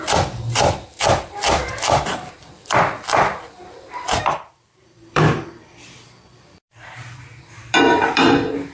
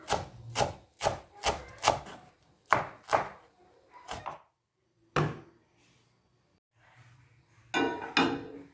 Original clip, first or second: second